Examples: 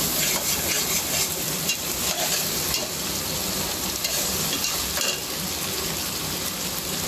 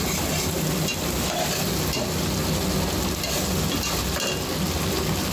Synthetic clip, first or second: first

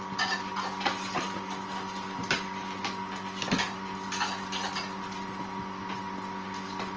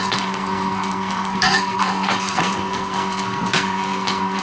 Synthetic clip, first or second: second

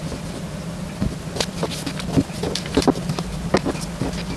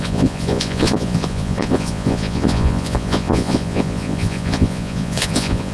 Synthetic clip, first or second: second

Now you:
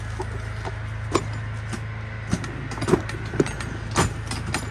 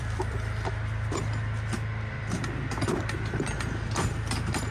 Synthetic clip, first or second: second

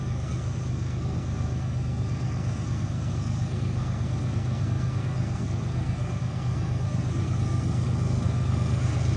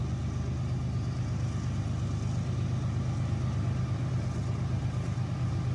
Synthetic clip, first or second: first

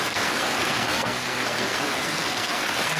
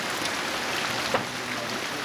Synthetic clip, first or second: first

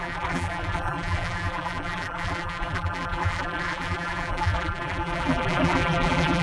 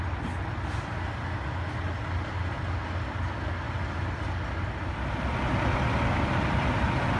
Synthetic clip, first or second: first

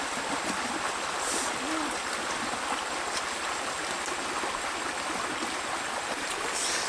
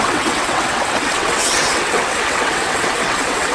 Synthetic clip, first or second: second